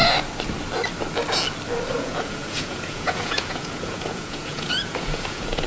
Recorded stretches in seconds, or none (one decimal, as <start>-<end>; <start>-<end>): 0.0-2.0